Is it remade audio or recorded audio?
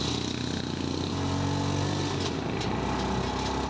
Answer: recorded